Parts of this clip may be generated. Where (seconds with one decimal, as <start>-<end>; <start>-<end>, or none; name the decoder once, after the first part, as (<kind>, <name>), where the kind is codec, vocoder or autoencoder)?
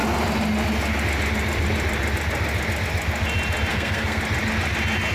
3.7-4.2 (codec, SNAC)